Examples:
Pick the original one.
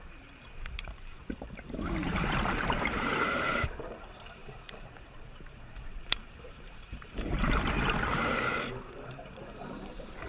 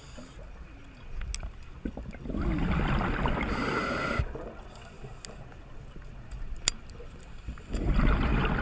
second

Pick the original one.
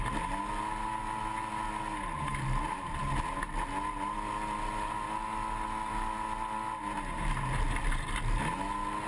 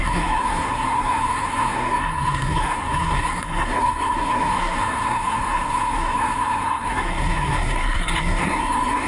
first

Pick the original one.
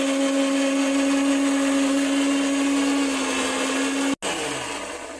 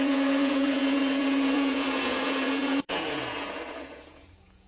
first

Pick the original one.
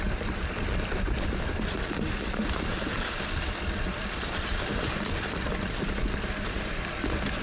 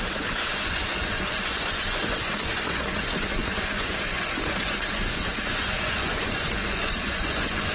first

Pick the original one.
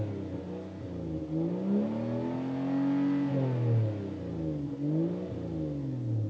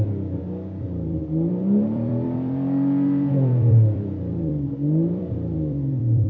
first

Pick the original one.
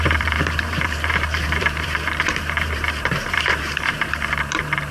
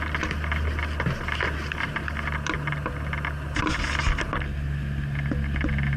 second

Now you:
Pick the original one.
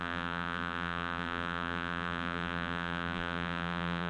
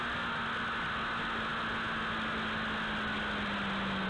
second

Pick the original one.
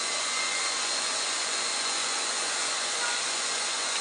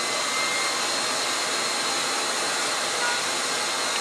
second